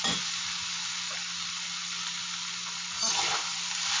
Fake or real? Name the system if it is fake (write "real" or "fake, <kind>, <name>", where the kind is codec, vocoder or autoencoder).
real